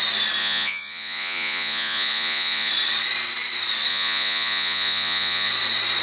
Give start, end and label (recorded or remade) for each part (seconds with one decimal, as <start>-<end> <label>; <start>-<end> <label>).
0.0-0.4 recorded; 0.4-2.7 remade; 2.7-3.9 recorded; 3.9-5.5 remade; 5.5-6.0 recorded